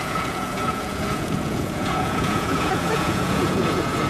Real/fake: fake